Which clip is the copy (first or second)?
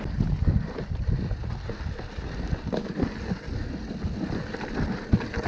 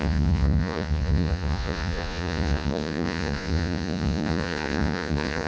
second